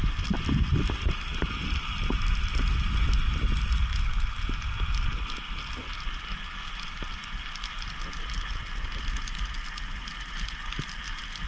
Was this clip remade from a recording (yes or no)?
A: no